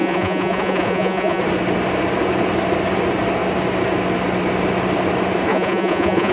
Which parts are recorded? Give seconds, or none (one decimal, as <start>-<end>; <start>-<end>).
1.4-5.5